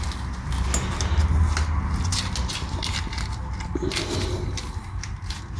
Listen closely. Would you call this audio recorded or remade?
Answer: recorded